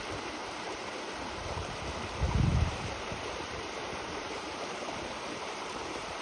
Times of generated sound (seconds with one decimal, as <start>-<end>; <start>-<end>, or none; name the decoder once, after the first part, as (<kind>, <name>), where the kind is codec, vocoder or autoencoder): 0.4-1.8 (vocoder, BigVGAN v2); 2.5-6.2